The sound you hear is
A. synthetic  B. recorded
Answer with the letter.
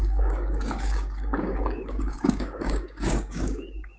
A